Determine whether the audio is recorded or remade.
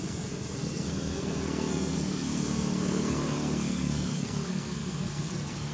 remade